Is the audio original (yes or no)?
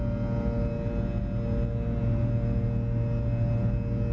yes